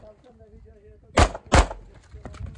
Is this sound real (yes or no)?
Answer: yes